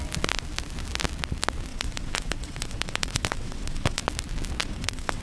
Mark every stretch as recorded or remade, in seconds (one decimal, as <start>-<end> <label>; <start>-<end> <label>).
0.0-1.7 recorded; 1.7-4.0 remade; 4.0-4.6 recorded; 4.6-5.2 remade